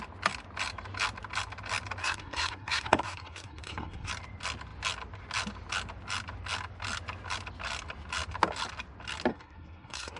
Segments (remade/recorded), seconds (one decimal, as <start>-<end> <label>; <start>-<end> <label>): 0.0-2.0 recorded; 2.0-4.1 remade; 4.1-9.3 recorded; 9.3-10.2 remade